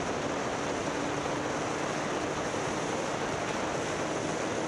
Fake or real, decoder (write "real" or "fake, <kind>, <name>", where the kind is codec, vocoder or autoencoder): real